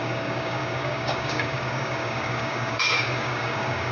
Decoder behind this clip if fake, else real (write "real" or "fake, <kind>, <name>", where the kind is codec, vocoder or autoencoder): fake, codec, DAC